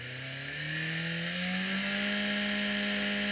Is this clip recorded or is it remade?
recorded